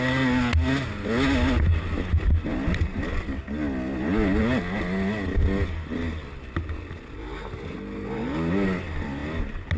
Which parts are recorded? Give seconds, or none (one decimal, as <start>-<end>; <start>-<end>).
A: 0.0-9.8